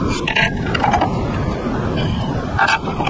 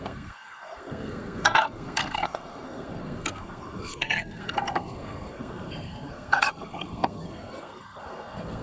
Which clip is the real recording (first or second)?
first